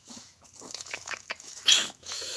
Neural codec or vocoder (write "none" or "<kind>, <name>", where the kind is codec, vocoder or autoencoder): autoencoder, DAC-VAE